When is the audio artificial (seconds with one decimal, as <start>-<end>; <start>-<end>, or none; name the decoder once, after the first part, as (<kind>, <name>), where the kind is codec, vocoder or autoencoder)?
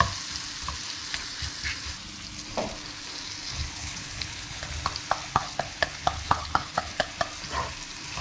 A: 3.4-4.7 (codec, HILCodec); 5.2-7.1